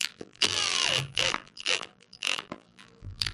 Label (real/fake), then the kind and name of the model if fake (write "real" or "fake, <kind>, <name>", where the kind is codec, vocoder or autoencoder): fake, vocoder, BigVGAN v2